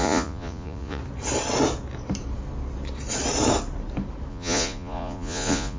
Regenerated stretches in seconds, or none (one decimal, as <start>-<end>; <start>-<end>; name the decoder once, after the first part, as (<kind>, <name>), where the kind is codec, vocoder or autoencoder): 0.0-1.0 (vocoder, Vocos); 4.3-5.8